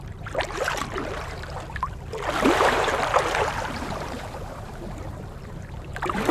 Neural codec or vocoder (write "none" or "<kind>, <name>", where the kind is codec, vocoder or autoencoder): vocoder, BigVGAN v2